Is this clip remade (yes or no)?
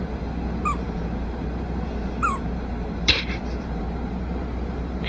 yes